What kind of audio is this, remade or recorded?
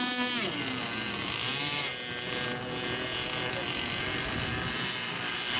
recorded